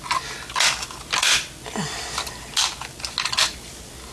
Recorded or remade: recorded